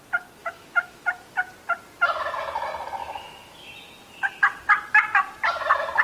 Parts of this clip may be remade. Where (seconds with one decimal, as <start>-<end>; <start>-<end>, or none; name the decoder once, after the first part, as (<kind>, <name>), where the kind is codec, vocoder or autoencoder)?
0.4-1.4 (autoencoder, DAC-VAE); 3.0-3.7